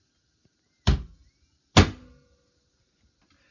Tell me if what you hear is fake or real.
real